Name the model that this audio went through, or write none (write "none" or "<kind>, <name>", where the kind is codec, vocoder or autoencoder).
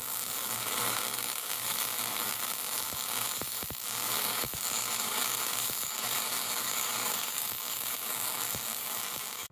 codec, DAC